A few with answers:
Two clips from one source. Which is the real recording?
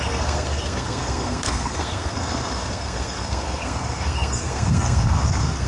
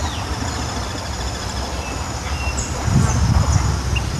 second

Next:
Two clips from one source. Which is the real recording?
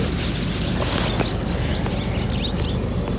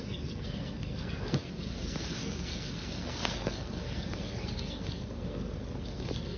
first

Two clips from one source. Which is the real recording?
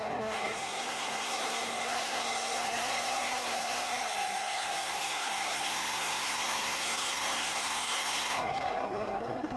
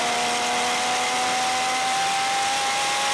second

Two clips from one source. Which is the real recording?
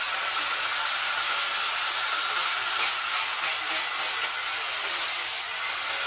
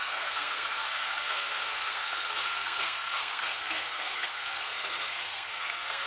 first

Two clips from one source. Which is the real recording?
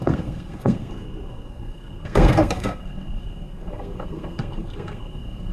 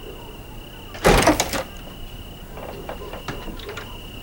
second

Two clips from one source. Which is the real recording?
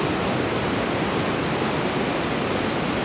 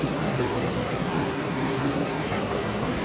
first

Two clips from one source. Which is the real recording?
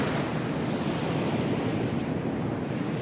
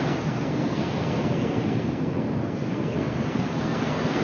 first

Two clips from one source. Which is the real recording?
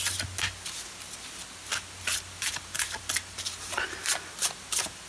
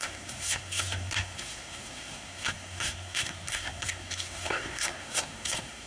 first